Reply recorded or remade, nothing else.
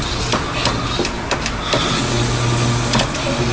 recorded